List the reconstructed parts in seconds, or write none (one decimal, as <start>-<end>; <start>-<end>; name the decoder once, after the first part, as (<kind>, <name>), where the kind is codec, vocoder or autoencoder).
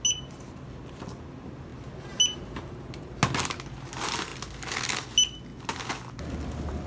none